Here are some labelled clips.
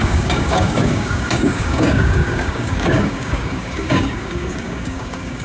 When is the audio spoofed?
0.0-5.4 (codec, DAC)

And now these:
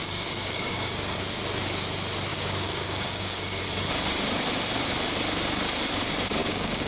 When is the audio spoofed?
0.0-1.2 (codec, DAC); 2.3-3.6; 6.4-6.9

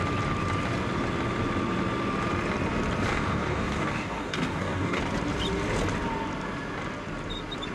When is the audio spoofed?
3.1-5.0 (codec, DAC)

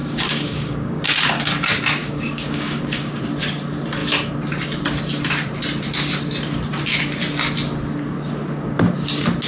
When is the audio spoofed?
0.0-1.0 (codec, DAC); 2.0-3.2

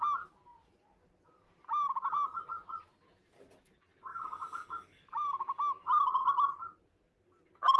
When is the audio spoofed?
4.1-5.0 (codec, DAC)

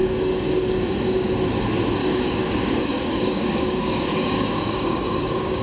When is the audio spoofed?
0.0-1.3 (codec, DAC); 2.0-5.6

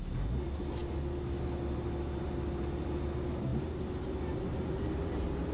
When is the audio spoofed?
none